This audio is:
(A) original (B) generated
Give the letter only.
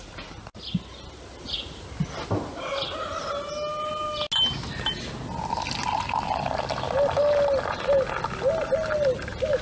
A